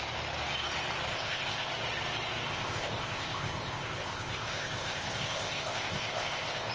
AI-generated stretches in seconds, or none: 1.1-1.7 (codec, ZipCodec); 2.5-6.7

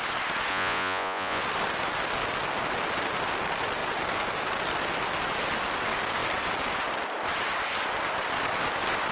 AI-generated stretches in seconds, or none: 0.5-1.4 (vocoder, Vocos)

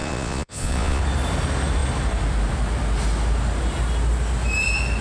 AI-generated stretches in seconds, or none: 0.0-1.0 (vocoder, Vocos)

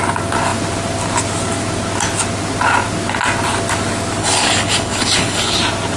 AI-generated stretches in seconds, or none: 4.2-5.6 (codec, HILCodec)

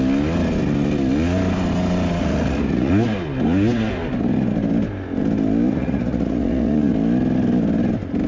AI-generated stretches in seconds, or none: 2.2-2.9 (vocoder, Vocos); 5.7-6.9

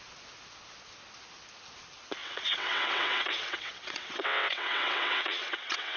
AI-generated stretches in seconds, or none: 2.2-6.0 (vocoder, WaveNeXt)